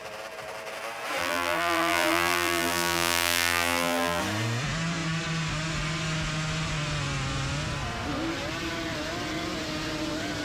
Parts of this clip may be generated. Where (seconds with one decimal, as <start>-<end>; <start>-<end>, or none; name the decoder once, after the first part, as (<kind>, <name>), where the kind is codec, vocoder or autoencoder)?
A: 1.2-4.2 (vocoder, BigVGAN v2)